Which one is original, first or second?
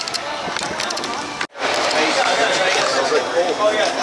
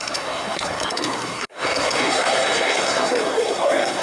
first